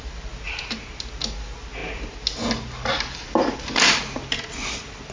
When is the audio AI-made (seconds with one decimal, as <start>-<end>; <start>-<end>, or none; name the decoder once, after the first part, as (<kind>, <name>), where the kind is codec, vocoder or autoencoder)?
none